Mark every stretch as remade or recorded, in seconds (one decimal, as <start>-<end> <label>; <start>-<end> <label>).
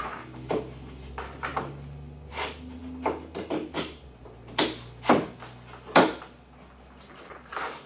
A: 0.0-7.9 recorded